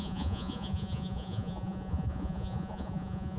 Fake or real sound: fake